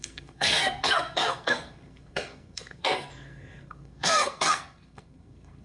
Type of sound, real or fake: fake